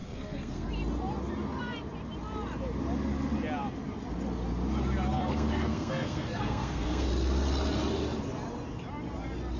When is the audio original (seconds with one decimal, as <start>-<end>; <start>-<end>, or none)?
0.7-5.1; 7.1-9.6